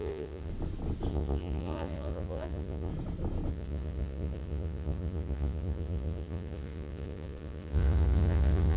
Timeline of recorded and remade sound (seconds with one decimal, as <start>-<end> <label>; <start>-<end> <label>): 0.0-0.5 remade; 0.5-1.1 recorded; 1.1-2.9 remade; 2.9-3.5 recorded; 3.5-8.8 remade